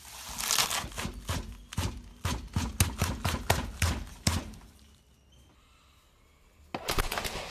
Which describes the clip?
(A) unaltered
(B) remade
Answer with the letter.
A